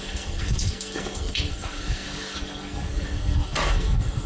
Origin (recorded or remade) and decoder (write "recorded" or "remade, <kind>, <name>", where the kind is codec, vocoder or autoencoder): remade, codec, SNAC